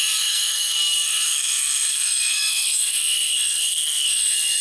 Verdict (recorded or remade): remade